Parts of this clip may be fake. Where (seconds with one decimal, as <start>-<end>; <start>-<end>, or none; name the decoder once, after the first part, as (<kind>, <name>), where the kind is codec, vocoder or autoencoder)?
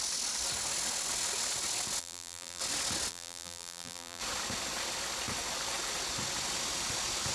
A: 2.0-2.6 (vocoder, BigVGAN v2); 3.1-4.2